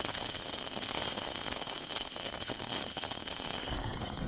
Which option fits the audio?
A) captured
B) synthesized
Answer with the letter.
B